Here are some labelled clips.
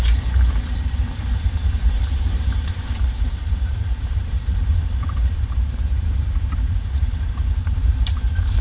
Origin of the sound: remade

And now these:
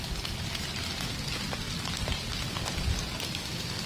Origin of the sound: recorded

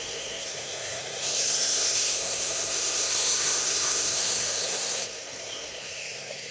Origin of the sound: remade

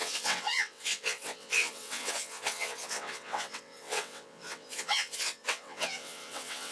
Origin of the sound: remade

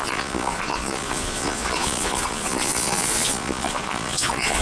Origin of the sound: remade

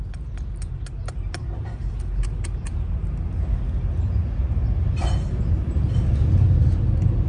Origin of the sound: recorded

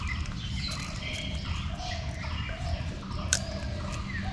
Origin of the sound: recorded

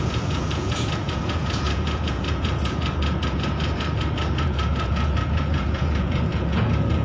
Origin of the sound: remade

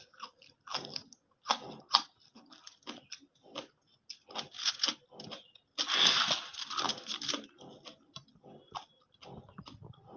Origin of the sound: recorded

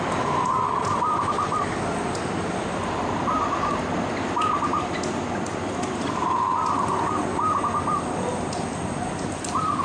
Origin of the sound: recorded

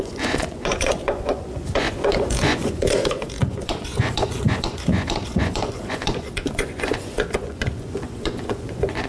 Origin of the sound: remade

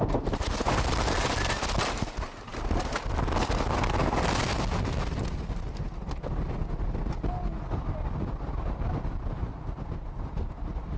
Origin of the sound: recorded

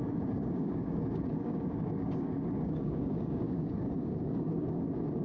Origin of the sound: remade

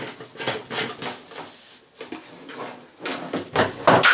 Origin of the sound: recorded